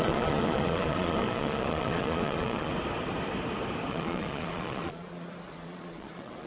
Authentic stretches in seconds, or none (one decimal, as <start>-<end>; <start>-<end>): 2.7-3.9